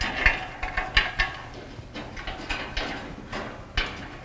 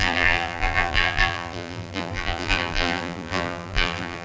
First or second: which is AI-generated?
second